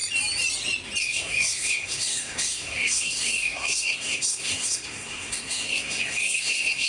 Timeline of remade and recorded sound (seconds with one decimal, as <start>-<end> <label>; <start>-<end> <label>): 0.0-1.0 recorded; 1.0-6.9 remade